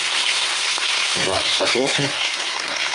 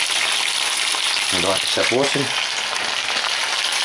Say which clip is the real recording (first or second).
second